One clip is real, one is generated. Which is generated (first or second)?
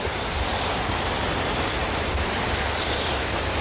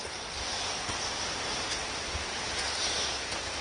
first